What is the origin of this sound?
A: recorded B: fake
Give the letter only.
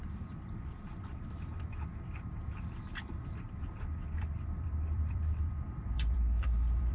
B